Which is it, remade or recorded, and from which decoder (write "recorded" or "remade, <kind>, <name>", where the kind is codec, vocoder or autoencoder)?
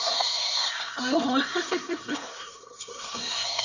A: remade, codec, SNAC